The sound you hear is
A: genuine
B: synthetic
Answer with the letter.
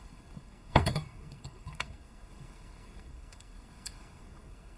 B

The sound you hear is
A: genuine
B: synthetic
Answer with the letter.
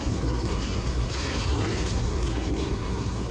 B